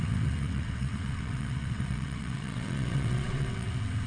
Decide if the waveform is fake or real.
fake